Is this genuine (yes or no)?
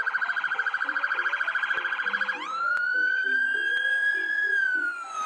no